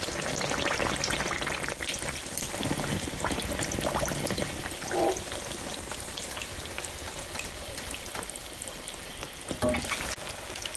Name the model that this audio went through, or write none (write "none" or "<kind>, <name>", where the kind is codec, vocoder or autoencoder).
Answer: none